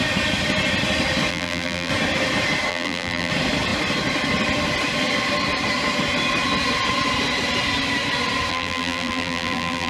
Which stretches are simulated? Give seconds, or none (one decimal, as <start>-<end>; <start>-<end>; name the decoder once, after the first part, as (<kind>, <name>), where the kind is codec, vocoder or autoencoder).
1.3-1.9 (vocoder, BigVGAN v2); 2.7-3.3; 8.5-9.9

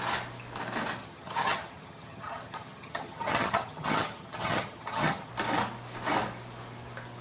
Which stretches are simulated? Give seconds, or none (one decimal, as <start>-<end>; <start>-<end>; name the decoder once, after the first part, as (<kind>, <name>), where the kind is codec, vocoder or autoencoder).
1.0-5.3 (vocoder, HiFi-GAN)